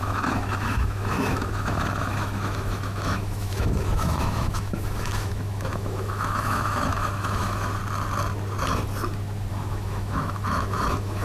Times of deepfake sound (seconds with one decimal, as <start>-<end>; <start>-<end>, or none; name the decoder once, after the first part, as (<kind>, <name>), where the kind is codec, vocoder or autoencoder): 0.0-7.8 (autoencoder, DAC-VAE); 9.5-11.2